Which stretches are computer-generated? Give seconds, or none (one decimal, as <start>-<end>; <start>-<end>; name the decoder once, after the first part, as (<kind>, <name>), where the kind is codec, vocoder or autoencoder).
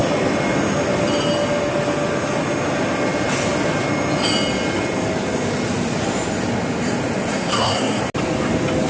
7.3-8.0 (codec, SNAC)